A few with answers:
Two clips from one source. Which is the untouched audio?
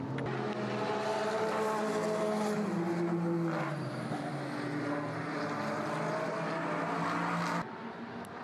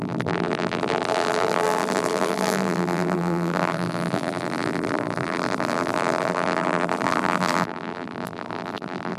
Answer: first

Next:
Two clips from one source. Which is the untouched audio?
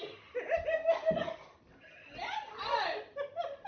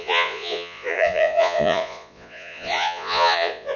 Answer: first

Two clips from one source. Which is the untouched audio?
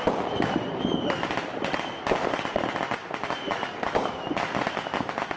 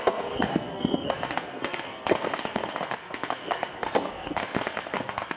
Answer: first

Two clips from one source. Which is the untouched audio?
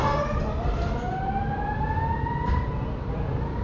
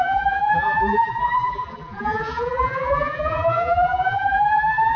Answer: first